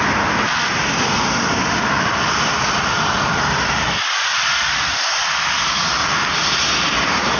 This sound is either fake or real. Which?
real